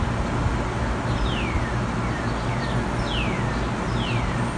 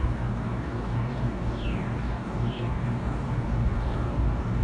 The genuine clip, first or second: first